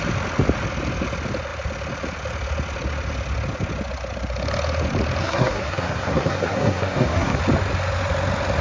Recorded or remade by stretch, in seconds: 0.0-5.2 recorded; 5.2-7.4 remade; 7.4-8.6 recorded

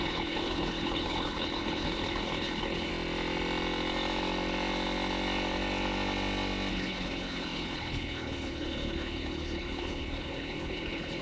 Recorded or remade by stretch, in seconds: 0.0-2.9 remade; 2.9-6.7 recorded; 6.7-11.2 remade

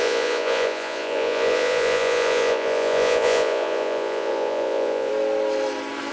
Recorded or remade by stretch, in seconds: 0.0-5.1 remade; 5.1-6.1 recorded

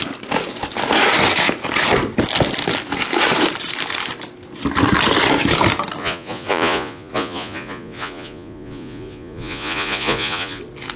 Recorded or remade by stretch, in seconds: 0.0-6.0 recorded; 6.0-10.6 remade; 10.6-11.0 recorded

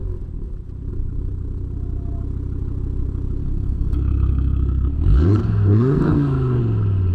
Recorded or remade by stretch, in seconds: 0.0-3.4 recorded; 3.4-6.6 remade; 6.6-7.1 recorded

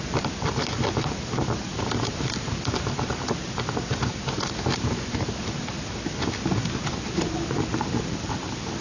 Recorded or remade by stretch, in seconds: 0.0-8.8 recorded

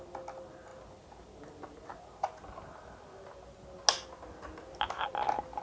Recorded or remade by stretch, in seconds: 0.0-5.6 recorded

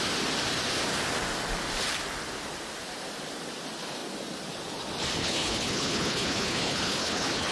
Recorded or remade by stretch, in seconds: 0.0-5.2 recorded; 5.2-7.5 remade